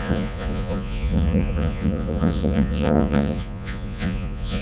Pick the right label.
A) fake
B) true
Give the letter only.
A